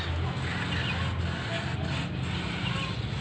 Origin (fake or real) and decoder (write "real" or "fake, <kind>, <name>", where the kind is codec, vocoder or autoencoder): real